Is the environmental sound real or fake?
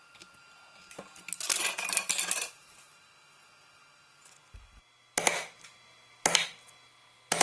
real